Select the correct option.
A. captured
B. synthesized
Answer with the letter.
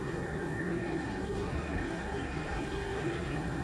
B